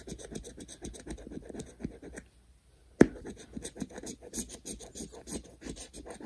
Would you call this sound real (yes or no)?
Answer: yes